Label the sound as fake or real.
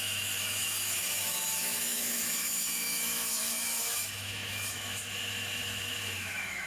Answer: fake